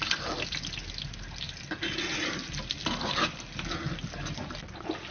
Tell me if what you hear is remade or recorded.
recorded